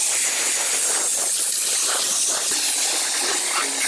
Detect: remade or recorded recorded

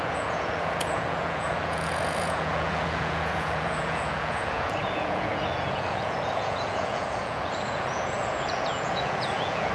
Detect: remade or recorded remade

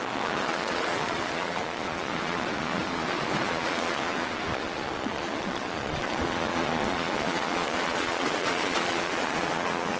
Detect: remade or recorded remade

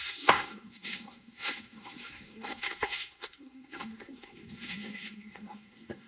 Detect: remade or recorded remade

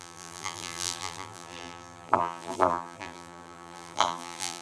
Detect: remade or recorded remade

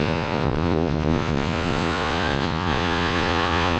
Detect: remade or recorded remade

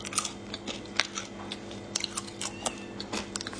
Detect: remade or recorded recorded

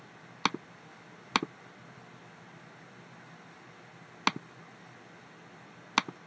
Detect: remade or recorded recorded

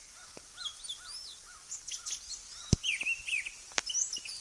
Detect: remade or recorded recorded